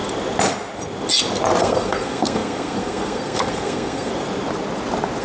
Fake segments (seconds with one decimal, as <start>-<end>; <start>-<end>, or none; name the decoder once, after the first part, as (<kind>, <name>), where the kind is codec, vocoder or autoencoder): 1.6-4.1 (codec, SNAC)

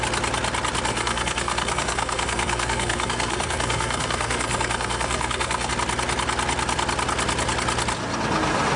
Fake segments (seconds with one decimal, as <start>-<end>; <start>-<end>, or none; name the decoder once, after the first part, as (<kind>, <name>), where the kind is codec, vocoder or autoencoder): 0.9-5.7 (codec, SNAC)

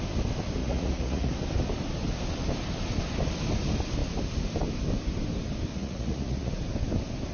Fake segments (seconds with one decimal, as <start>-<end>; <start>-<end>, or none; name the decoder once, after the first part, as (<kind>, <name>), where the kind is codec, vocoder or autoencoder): 0.6-1.3 (vocoder, Vocos); 5.7-6.5

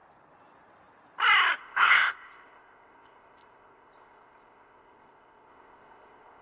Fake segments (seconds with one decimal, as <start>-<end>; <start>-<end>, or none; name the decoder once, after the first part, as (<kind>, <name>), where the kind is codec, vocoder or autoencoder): 1.6-6.4 (codec, ZipCodec)

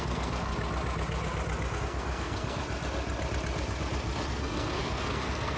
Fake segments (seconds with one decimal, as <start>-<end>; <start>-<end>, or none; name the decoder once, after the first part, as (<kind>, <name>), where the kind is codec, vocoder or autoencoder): 0.0-0.5 (codec, SNAC); 1.8-2.6; 4.3-5.6

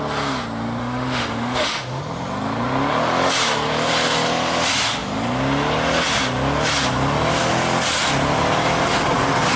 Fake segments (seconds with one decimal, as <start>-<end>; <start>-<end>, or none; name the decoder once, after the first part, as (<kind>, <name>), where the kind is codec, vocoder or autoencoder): 0.8-2.0 (autoencoder, DAC-VAE)

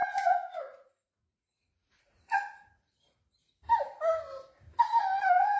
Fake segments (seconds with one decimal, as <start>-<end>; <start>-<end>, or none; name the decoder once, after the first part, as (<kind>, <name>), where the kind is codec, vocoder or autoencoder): 0.0-3.4 (vocoder, Vocos)